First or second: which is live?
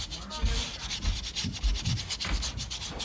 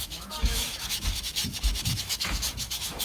first